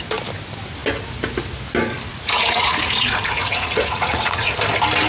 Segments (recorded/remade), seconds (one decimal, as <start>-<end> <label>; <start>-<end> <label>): 0.0-2.1 recorded; 2.1-4.5 remade; 4.5-5.1 recorded